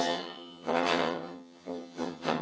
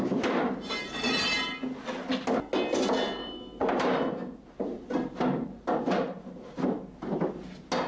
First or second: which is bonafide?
second